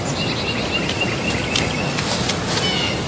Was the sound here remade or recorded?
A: recorded